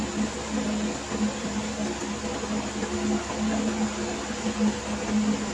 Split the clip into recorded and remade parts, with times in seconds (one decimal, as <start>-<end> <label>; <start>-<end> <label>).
0.0-5.5 recorded